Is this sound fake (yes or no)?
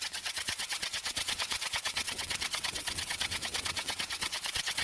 yes